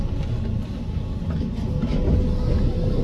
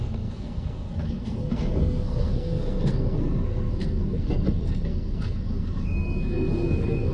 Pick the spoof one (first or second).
second